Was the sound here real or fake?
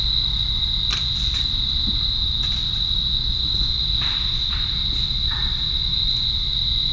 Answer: real